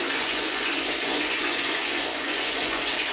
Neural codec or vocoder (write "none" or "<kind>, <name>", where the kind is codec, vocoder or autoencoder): vocoder, Vocos